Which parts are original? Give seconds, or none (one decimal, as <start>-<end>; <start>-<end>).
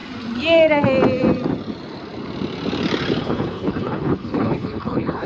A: 0.0-3.2